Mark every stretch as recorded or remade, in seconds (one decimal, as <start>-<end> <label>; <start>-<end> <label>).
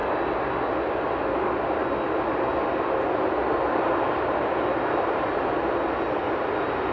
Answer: 0.0-6.9 recorded